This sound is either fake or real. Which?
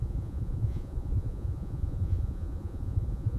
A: fake